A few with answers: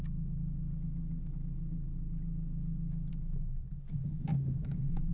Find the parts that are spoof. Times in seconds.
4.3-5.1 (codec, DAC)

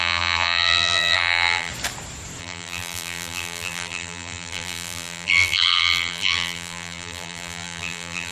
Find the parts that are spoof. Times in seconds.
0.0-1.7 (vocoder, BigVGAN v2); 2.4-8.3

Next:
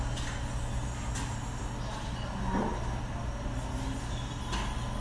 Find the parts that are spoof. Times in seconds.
none

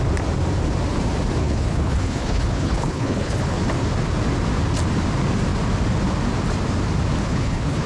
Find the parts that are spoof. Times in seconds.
1.4-3.6 (codec, HILCodec); 7.2-7.9

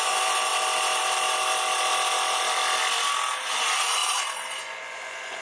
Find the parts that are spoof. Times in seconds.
0.0-0.5 (vocoder, Vocos); 3.4-4.0; 4.5-5.4